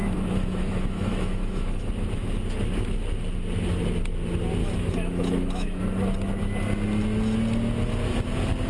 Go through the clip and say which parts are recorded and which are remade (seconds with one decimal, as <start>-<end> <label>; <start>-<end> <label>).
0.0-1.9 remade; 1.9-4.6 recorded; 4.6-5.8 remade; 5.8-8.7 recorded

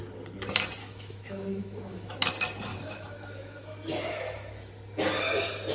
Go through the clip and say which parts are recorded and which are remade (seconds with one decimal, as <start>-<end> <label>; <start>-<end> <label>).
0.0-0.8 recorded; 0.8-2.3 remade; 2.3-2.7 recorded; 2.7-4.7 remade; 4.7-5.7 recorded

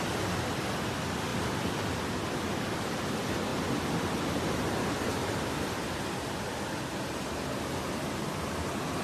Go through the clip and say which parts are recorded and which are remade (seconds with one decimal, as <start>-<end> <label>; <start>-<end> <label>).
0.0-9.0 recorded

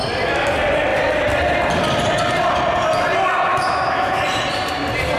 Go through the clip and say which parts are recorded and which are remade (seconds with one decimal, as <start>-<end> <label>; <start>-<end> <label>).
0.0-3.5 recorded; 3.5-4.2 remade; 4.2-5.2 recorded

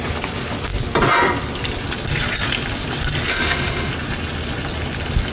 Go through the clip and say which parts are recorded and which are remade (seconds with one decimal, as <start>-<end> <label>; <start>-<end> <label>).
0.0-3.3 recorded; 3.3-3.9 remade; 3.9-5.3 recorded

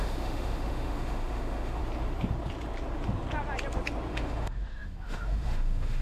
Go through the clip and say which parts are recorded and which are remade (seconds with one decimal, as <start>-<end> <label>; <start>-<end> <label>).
0.0-1.8 remade; 1.8-4.1 recorded; 4.1-6.0 remade

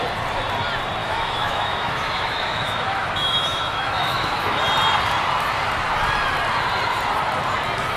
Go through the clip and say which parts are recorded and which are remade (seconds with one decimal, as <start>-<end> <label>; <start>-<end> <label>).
0.0-1.0 recorded; 1.0-4.6 remade; 4.6-8.0 recorded